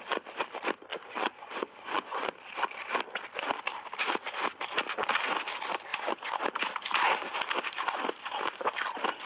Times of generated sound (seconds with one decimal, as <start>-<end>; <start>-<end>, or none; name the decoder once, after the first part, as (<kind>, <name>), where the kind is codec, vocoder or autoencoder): 0.9-2.3 (vocoder, Vocos); 5.9-6.4